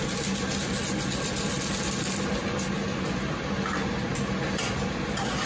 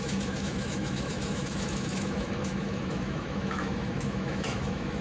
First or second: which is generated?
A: second